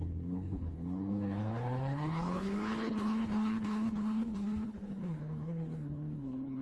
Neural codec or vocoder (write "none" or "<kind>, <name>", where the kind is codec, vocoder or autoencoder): codec, HILCodec